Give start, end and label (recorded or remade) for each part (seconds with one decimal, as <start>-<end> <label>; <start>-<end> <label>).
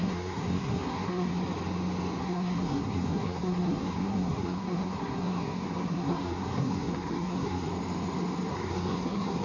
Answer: 0.0-1.3 remade; 1.3-2.2 recorded; 2.2-7.7 remade; 7.7-8.5 recorded; 8.5-9.4 remade